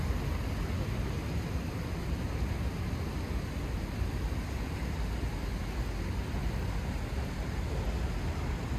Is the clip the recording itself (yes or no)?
yes